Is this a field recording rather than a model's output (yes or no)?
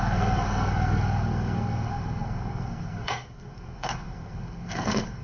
no